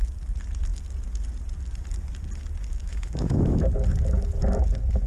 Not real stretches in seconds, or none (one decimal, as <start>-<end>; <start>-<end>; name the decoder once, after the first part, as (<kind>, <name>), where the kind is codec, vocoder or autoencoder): 2.8-3.7 (autoencoder, DAC-VAE)